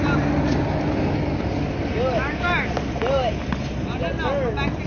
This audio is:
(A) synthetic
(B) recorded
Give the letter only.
B